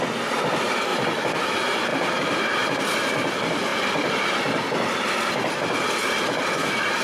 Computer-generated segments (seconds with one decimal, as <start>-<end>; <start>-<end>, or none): 0.9-1.4; 1.9-2.8